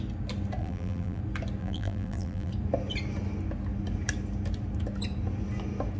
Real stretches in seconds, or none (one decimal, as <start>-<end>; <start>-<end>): 0.0-0.6; 1.2-1.6; 2.5-6.0